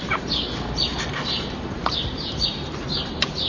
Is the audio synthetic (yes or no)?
yes